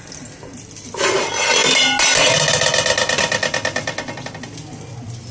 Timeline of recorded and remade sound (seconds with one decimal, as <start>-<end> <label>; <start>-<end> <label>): 0.0-5.3 recorded